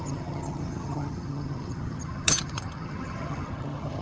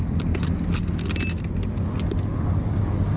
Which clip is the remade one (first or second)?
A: first